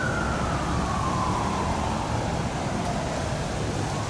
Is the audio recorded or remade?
recorded